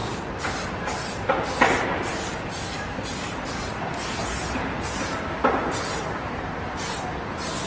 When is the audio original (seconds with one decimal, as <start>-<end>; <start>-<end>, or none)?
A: 0.0-7.7